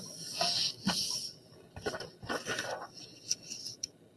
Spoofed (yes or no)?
no